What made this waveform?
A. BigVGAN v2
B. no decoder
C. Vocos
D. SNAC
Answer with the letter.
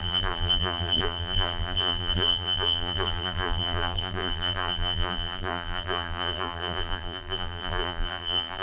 A